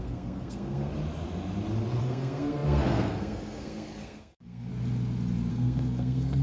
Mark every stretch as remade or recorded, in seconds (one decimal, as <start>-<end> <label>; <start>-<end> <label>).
0.0-0.9 remade; 0.9-2.0 recorded; 2.0-4.7 remade; 4.7-5.5 recorded; 5.5-6.4 remade